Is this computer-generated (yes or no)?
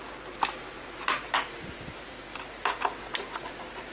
no